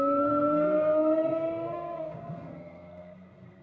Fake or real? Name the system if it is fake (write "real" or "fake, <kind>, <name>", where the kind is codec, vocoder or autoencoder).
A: fake, codec, SNAC